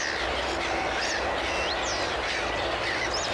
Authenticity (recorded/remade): recorded